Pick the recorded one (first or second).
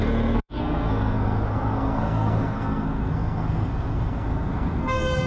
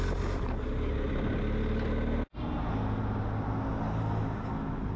second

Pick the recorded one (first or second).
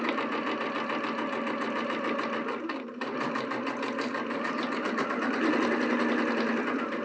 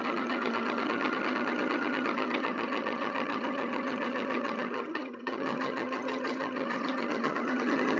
first